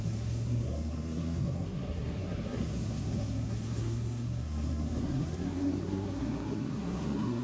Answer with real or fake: fake